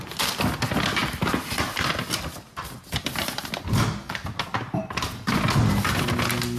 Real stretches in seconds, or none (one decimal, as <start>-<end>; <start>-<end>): 0.0-6.6

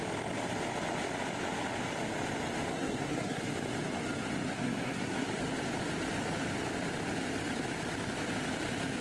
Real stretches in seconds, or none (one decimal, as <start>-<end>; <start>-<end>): 0.0-2.7; 3.4-4.5; 5.4-9.0

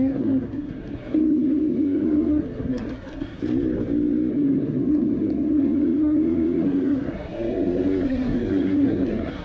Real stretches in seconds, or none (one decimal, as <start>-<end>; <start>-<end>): 3.4-4.3